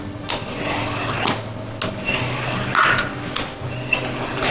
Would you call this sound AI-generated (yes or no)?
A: no